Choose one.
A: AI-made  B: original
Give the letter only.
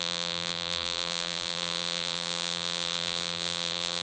A